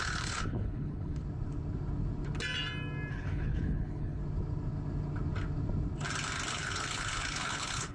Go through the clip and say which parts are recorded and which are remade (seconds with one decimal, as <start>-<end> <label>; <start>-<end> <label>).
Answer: 0.0-1.2 remade; 1.2-3.1 recorded; 3.1-4.2 remade; 4.2-6.5 recorded; 6.5-7.9 remade

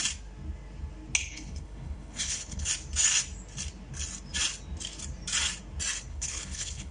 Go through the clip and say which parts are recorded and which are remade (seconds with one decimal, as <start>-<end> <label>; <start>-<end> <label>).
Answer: 0.0-1.2 recorded; 1.2-2.7 remade; 2.7-6.1 recorded; 6.1-6.9 remade

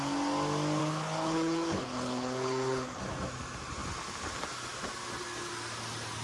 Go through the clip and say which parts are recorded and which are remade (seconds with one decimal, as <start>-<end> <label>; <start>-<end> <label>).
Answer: 0.0-0.8 recorded; 0.8-3.0 remade; 3.0-6.2 recorded

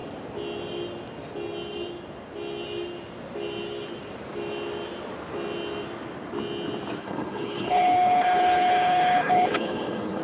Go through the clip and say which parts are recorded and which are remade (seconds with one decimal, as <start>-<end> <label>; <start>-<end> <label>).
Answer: 0.0-7.0 recorded; 7.0-10.2 remade